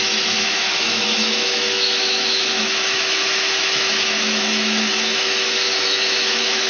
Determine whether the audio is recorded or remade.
remade